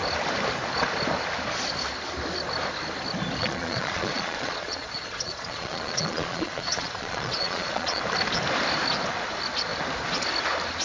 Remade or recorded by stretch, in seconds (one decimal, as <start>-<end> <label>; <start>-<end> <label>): 0.0-3.4 recorded; 3.4-8.0 remade; 8.0-10.8 recorded